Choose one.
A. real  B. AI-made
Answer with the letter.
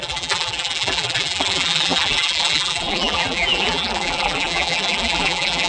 B